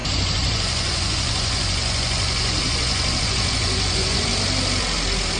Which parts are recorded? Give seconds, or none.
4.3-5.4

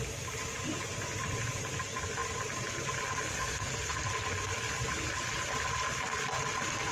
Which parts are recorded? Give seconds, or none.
0.0-3.3; 3.9-6.9